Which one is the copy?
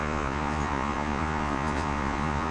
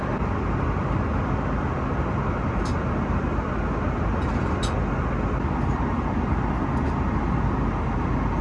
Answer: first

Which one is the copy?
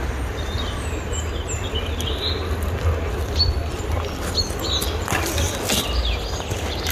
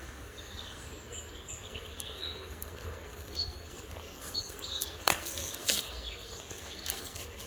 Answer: second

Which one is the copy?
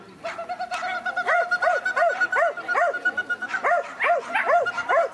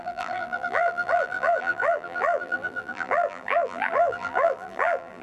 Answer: second